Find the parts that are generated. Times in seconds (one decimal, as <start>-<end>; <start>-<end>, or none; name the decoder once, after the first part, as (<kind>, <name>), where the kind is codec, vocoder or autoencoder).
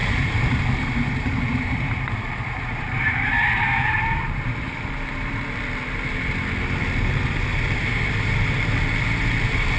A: 0.0-5.3 (vocoder, BigVGAN v2); 7.5-8.4